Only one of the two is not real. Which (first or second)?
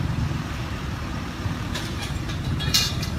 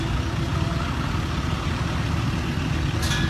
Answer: first